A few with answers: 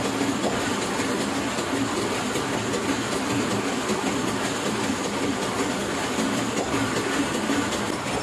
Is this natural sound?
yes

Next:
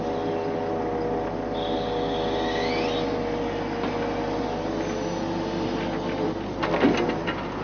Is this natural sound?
yes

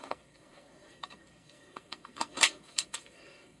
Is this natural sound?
no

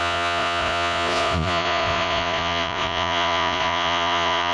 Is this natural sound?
no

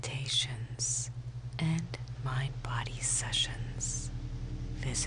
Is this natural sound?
yes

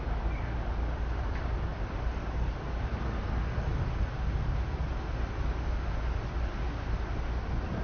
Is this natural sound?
yes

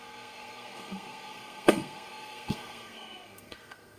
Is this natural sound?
no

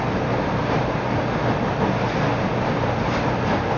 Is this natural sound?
yes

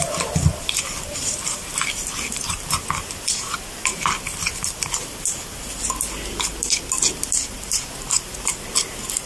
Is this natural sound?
no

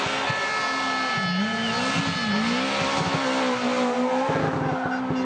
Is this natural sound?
yes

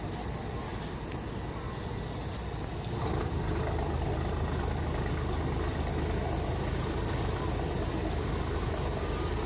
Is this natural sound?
yes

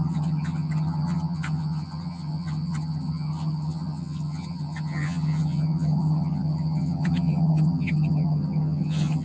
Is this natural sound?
no